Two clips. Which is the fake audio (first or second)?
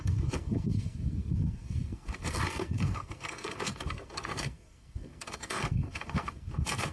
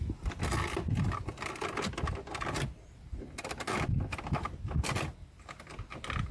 first